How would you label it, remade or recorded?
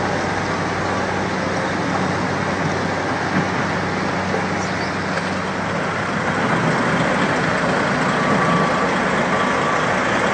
recorded